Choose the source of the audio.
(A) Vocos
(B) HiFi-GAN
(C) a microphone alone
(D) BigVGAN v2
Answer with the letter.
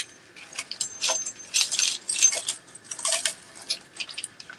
D